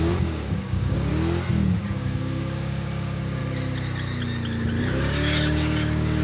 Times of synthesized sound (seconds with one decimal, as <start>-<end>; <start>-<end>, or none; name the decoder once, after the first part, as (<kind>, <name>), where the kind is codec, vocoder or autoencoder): 0.0-1.1 (codec, DAC); 1.7-3.4; 4.8-6.2